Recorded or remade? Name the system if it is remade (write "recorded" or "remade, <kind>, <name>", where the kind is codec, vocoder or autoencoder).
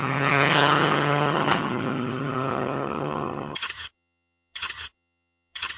remade, vocoder, HiFi-GAN